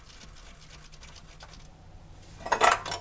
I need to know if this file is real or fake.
real